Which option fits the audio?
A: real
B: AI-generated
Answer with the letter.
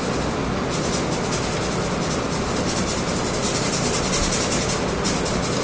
A